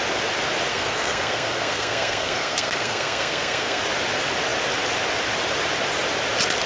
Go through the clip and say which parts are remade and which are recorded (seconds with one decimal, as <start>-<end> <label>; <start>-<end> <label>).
0.0-0.7 recorded; 0.7-3.8 remade; 3.8-6.7 recorded